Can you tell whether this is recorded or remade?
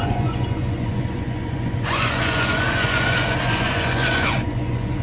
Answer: remade